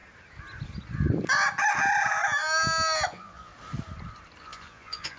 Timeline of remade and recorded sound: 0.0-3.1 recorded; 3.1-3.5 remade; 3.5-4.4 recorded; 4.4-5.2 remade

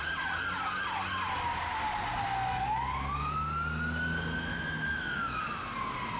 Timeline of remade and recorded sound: 0.0-4.5 recorded; 4.5-5.4 remade; 5.4-6.2 recorded

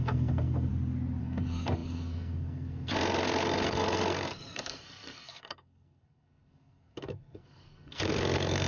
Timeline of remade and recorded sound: 0.0-0.7 remade; 0.7-1.2 recorded; 1.2-8.7 remade

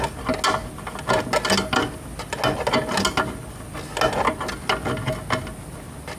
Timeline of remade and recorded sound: 0.0-6.2 recorded

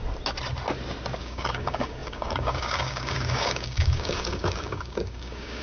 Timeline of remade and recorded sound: 0.0-1.2 recorded; 1.2-5.6 remade

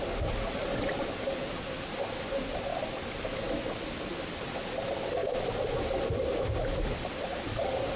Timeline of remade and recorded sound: 0.0-2.7 recorded; 2.7-3.3 remade; 3.3-8.0 recorded

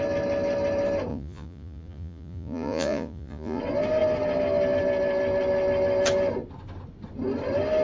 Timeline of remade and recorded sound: 0.0-1.1 recorded; 1.1-3.6 remade; 3.6-7.8 recorded

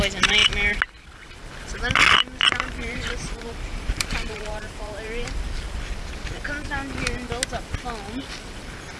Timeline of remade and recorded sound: 0.0-2.4 recorded; 2.4-5.7 remade; 5.7-9.0 recorded